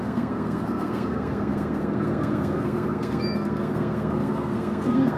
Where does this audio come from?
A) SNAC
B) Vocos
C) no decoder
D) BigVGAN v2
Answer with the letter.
A